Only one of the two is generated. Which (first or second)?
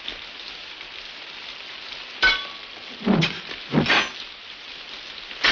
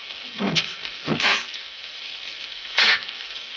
second